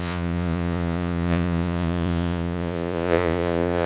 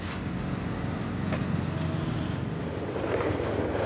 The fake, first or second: first